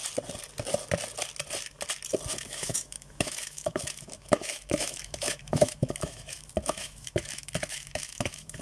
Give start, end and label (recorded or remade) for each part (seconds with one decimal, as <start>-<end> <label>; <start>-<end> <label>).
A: 0.0-2.3 recorded; 2.3-8.6 remade